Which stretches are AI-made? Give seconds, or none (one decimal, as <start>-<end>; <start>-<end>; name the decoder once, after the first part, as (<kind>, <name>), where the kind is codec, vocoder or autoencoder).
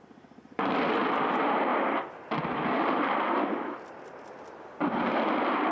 0.0-5.7 (vocoder, BigVGAN v2)